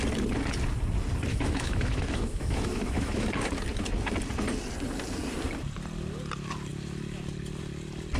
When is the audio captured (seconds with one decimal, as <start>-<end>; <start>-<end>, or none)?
0.0-1.3; 3.3-8.2